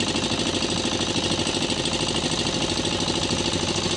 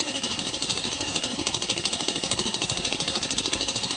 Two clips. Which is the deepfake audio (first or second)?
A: second